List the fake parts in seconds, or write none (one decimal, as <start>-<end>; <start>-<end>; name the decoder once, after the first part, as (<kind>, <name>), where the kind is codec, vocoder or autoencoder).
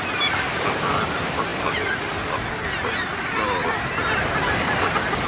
none